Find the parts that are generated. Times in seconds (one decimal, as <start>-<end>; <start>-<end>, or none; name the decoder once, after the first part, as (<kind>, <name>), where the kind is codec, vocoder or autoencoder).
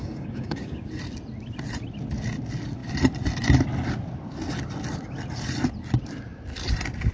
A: 0.0-0.9 (codec, DAC)